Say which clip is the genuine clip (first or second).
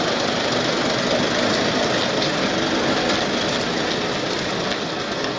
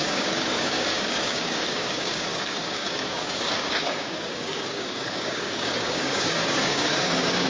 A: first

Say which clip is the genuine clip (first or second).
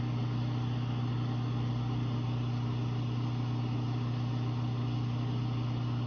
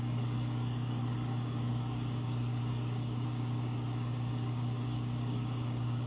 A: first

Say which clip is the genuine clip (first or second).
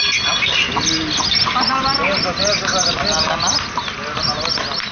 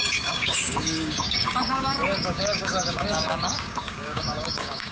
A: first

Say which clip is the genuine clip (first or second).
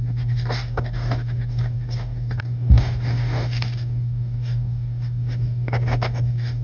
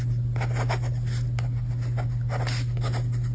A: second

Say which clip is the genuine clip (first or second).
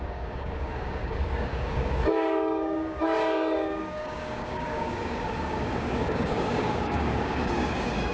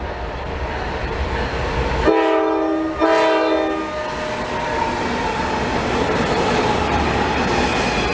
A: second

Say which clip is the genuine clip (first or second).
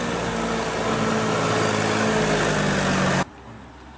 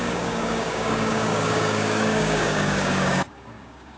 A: first